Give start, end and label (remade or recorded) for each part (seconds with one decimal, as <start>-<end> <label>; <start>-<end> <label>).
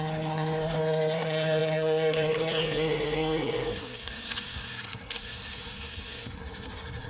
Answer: 0.0-7.1 remade